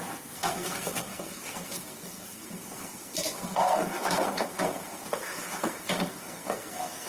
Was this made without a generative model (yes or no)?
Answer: no